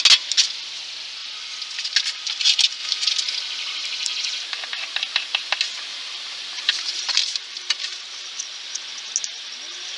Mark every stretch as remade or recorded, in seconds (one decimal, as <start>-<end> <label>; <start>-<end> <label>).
0.0-2.8 recorded; 2.8-7.1 remade; 7.1-10.0 recorded

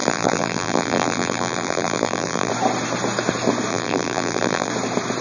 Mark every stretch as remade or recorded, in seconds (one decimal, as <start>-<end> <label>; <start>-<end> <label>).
0.0-2.5 remade; 2.5-3.7 recorded; 3.7-4.7 remade; 4.7-5.2 recorded

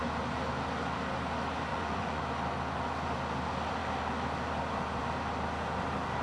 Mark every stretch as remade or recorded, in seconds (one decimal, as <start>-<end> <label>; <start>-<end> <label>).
0.0-1.7 recorded; 1.7-2.2 remade; 2.2-6.2 recorded

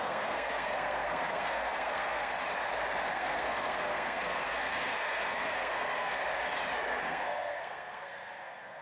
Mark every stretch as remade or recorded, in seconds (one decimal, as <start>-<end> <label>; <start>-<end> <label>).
0.0-2.3 remade; 2.3-3.0 recorded; 3.0-6.2 remade; 6.2-7.0 recorded; 7.0-8.8 remade